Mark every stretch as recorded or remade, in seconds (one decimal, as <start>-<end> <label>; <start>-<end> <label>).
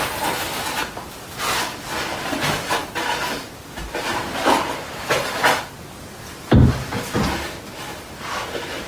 0.0-8.9 recorded